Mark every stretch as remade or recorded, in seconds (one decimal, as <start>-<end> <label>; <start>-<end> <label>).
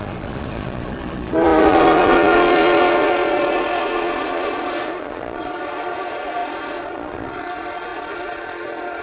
0.0-9.0 remade